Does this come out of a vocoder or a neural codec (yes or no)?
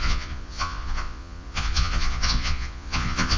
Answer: yes